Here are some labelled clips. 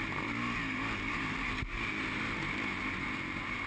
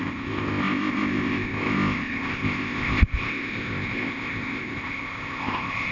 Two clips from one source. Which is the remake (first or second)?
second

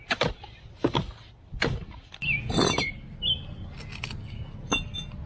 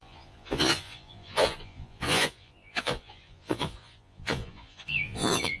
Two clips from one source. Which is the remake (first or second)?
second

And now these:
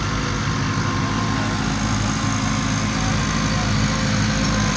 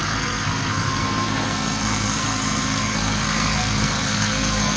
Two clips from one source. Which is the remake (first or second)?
second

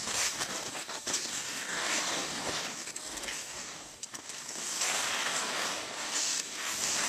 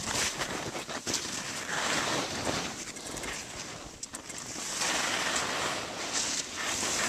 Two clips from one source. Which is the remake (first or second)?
first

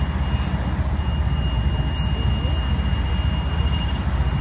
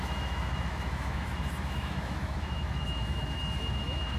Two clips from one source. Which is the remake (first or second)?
second